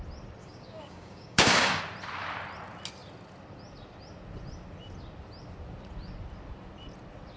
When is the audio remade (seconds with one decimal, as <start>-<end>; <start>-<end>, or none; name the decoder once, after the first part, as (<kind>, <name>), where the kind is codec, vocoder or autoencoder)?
0.4-1.8 (codec, DAC)